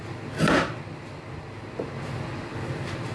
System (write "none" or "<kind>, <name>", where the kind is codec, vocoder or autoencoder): none